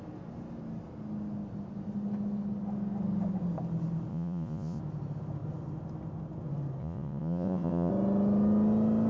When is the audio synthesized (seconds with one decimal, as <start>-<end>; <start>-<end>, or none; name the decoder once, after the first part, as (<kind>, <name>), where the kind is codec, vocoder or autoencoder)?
4.1-4.8 (vocoder, Vocos); 6.8-7.9